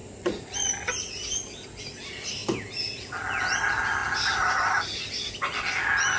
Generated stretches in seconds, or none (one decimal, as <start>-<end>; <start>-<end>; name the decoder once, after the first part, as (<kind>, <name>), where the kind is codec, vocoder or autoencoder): none